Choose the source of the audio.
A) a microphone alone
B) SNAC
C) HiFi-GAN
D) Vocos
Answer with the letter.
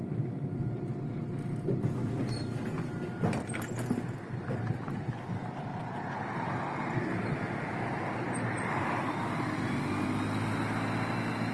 A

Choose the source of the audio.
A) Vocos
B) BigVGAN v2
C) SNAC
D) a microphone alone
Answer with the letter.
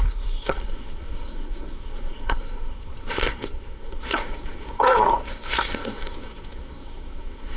C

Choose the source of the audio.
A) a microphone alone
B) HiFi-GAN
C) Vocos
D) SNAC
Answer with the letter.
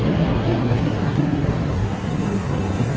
D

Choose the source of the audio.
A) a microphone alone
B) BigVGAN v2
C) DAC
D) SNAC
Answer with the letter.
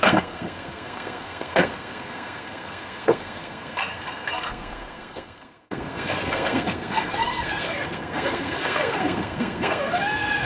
D